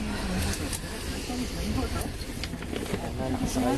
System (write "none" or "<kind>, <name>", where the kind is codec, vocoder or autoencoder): none